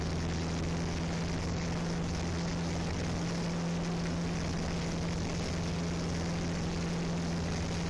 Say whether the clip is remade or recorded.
recorded